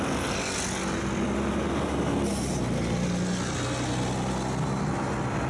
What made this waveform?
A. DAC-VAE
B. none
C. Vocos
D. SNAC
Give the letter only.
B